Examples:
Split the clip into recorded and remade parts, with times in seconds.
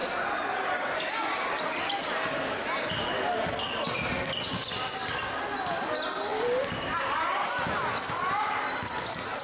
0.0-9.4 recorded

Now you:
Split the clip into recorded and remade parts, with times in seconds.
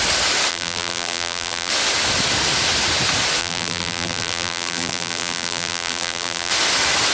0.0-0.5 recorded; 0.5-1.7 remade; 1.7-3.4 recorded; 3.4-6.5 remade; 6.5-7.1 recorded